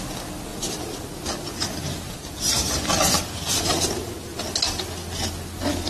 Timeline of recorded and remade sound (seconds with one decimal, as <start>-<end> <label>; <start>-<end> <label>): 0.0-0.5 recorded; 0.5-3.6 remade; 3.6-5.9 recorded